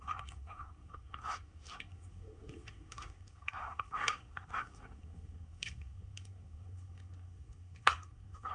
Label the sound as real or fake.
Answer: fake